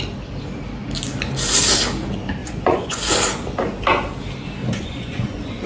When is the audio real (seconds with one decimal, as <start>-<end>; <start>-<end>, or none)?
0.0-2.4; 3.0-4.6